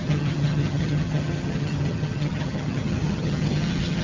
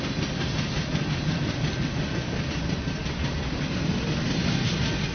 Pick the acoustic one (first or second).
second